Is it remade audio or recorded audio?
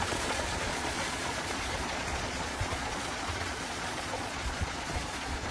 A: remade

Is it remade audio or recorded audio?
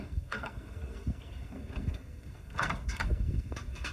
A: remade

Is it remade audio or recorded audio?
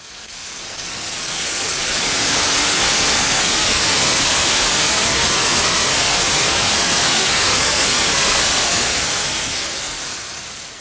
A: remade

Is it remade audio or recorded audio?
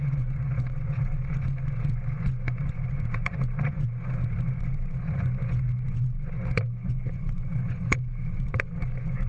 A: remade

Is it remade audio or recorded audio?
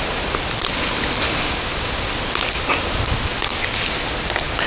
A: recorded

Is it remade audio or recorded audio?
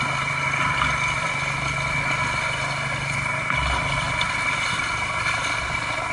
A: recorded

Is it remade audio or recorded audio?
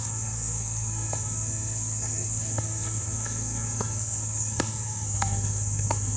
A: remade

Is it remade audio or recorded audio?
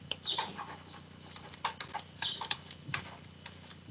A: recorded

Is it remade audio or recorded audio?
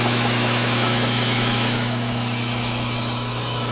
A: remade